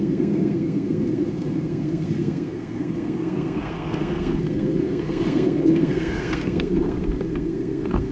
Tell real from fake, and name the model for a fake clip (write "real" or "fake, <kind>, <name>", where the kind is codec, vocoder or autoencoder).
fake, codec, SNAC